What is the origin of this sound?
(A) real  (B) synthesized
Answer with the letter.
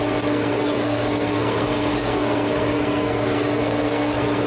B